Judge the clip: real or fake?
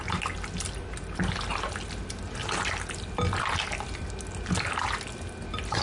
real